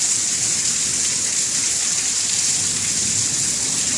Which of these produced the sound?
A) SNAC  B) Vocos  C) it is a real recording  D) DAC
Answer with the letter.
C